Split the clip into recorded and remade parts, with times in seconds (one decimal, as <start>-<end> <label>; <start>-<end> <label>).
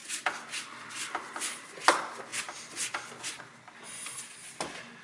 0.0-5.0 recorded